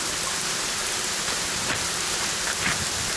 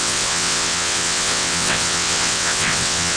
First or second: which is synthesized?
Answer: second